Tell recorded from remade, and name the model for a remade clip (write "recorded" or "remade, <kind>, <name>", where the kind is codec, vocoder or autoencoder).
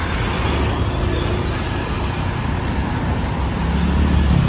recorded